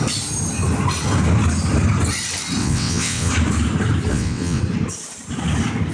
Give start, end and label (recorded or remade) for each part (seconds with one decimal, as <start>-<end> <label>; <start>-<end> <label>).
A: 0.0-2.6 recorded; 2.6-3.3 remade; 3.3-4.1 recorded; 4.1-4.6 remade; 4.6-5.9 recorded